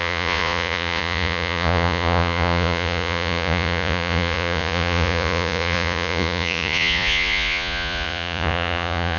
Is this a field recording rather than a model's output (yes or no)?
no